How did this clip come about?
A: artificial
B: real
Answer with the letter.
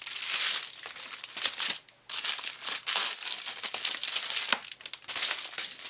B